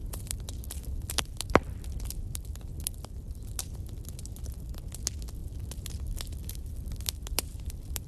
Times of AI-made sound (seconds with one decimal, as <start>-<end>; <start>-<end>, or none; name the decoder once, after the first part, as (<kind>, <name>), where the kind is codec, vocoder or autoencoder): 0.0-3.9 (vocoder, BigVGAN v2); 5.4-8.1